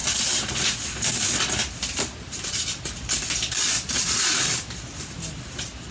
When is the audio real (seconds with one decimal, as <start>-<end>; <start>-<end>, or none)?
0.0-5.9